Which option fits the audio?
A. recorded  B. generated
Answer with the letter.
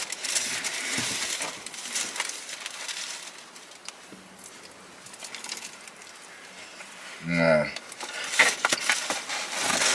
A